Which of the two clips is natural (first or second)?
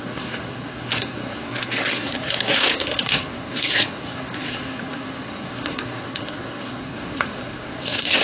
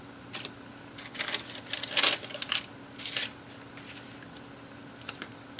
second